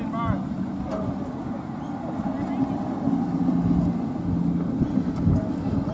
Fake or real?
real